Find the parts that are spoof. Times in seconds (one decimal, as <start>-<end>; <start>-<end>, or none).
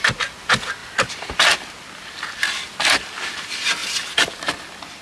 none